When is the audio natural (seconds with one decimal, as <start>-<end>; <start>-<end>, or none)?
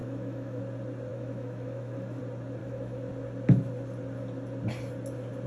0.6-1.1; 2.2-2.6; 3.1-5.5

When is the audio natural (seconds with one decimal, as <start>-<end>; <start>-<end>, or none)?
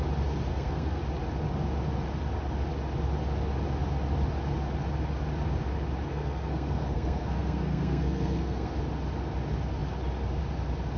0.0-0.5; 1.0-6.1; 8.7-11.0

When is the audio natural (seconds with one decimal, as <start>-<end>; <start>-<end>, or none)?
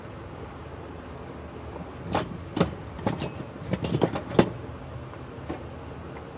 0.0-6.4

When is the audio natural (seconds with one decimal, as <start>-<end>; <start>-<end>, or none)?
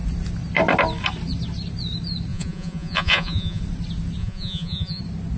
0.0-2.3; 3.6-4.2; 5.0-5.4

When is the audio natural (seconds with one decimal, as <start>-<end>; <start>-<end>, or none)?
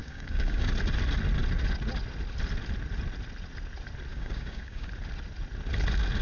0.7-4.1; 4.9-6.2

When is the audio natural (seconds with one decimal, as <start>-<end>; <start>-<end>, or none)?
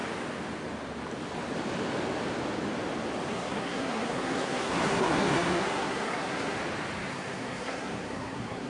0.0-3.3; 6.6-7.1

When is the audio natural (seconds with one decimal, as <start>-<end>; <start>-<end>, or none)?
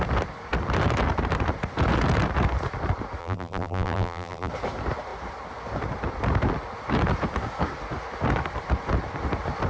0.0-3.2; 4.5-9.7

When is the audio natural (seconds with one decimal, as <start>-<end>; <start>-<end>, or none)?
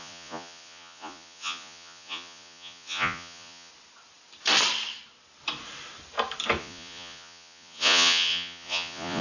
3.7-6.6